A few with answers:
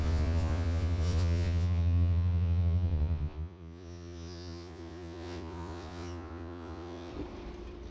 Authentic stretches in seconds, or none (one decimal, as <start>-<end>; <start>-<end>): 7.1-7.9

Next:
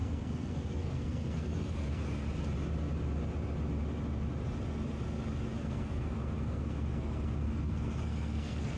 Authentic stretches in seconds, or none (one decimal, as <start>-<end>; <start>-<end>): 2.0-5.5

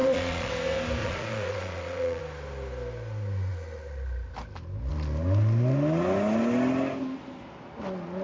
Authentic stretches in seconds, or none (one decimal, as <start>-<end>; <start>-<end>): 0.5-1.0; 2.2-8.2

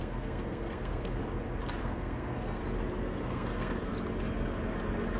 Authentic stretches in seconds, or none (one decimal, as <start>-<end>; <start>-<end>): 1.2-1.8; 2.6-3.2; 3.9-5.2